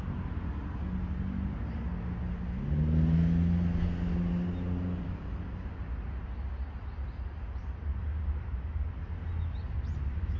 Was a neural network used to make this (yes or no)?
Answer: no